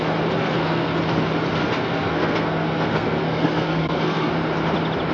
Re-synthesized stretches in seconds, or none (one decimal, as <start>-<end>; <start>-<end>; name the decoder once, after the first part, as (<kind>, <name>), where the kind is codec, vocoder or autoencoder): 0.4-1.0 (codec, SNAC); 1.6-4.3